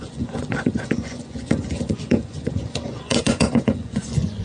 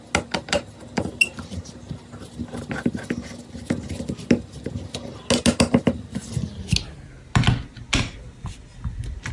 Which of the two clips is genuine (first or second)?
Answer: second